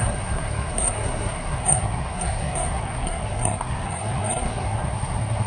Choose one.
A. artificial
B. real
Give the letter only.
A